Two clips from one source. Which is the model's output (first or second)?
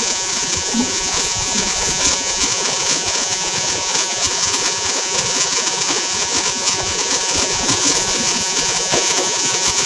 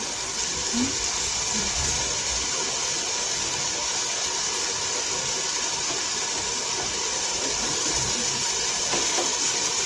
first